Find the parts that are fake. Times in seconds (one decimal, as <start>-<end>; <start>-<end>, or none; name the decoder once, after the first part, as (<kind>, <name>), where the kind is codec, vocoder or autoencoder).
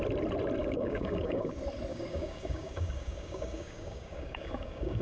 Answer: 0.6-1.5 (codec, DAC); 1.9-5.0